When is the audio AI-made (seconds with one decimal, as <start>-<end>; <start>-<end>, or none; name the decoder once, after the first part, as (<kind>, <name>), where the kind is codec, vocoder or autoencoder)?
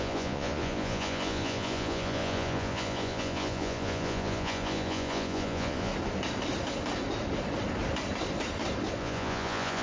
0.0-5.9 (vocoder, Vocos); 9.0-9.8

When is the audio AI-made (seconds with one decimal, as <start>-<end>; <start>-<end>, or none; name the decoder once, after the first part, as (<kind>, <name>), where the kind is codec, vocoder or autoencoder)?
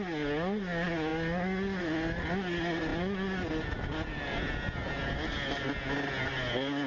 none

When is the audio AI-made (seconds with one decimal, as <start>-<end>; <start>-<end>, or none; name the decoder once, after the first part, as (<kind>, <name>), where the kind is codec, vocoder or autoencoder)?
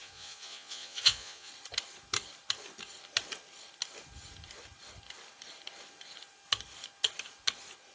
0.0-1.5 (vocoder, Vocos)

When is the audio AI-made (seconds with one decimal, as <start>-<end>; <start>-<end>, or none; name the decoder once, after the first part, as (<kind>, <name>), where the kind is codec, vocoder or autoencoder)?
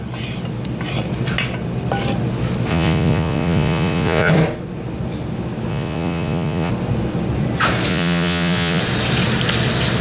2.7-4.3 (vocoder, Vocos); 5.7-6.7; 7.9-8.8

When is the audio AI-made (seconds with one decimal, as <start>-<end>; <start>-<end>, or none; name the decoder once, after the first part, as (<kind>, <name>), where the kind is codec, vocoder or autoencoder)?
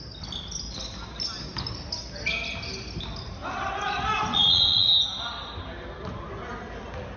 4.3-4.9 (vocoder, Vocos)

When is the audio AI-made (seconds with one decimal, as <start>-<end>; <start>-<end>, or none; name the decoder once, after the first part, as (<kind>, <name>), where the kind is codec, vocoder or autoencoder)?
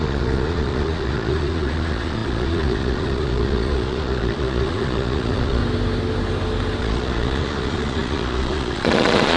0.0-5.6 (vocoder, Vocos); 6.8-9.4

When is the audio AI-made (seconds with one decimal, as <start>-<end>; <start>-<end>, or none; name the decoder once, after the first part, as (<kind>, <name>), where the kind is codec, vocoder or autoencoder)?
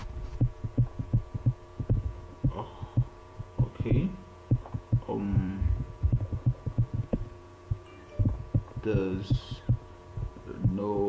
0.0-11.1 (vocoder, Vocos)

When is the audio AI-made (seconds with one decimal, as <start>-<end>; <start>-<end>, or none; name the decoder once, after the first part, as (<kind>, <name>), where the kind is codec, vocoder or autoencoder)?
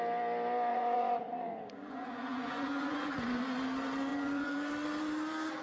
0.7-3.4 (vocoder, Vocos); 4.1-4.7